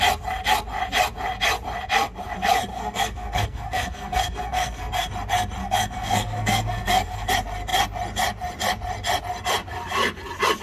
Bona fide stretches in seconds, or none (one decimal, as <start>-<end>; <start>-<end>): 0.0-2.7; 5.1-5.6; 7.3-10.6